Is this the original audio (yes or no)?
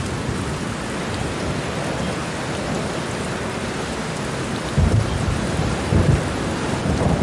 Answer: yes